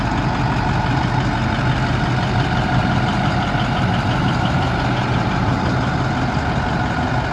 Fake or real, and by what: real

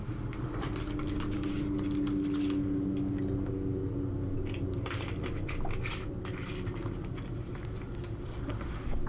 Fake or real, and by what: real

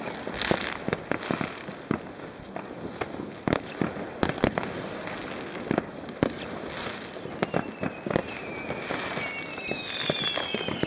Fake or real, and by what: real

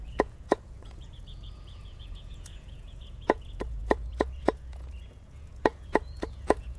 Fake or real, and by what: fake, vocoder, Vocos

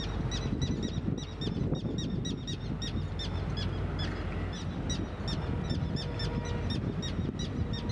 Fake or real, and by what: real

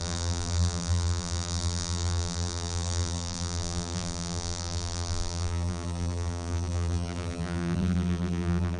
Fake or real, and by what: fake, vocoder, BigVGAN v2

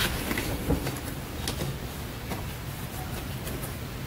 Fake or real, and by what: real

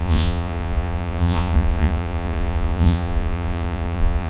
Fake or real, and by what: fake, vocoder, Vocos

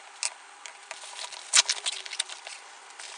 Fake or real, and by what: real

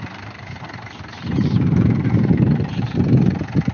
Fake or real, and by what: fake, vocoder, BigVGAN v2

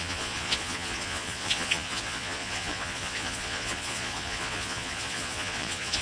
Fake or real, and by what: fake, vocoder, Vocos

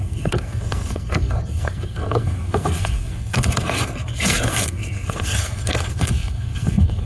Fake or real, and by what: fake, codec, SNAC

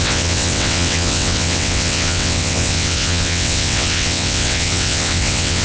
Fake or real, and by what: fake, vocoder, WaveNeXt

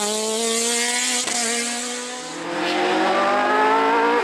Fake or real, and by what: real